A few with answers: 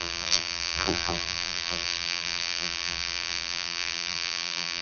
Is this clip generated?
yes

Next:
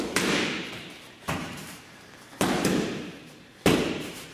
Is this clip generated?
yes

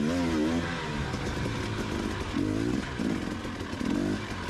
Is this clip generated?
no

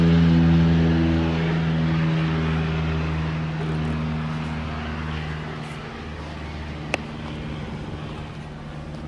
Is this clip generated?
no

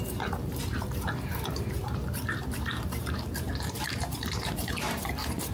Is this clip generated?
yes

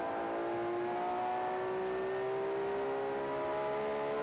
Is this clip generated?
no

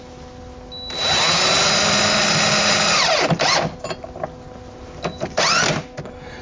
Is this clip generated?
no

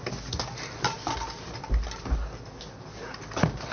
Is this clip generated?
no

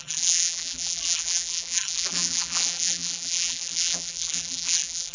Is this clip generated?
yes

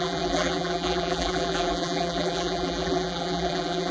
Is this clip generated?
yes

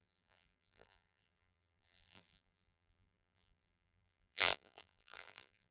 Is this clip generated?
yes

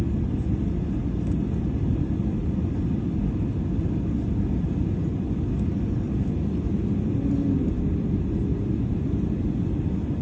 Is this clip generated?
no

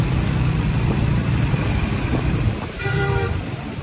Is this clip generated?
yes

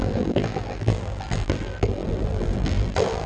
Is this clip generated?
yes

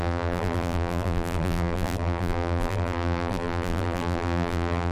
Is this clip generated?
yes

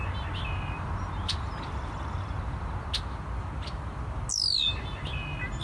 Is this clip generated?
no